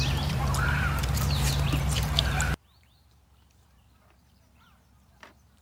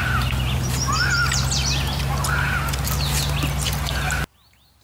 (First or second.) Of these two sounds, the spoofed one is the first